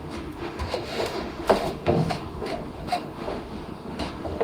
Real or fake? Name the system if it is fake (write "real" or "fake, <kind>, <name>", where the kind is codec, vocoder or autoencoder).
fake, autoencoder, DAC-VAE